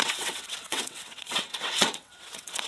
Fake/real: fake